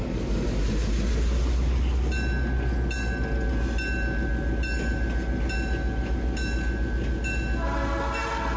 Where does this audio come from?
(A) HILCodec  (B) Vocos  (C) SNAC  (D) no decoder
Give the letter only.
D